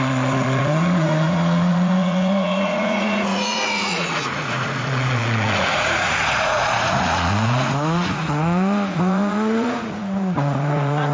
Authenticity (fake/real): fake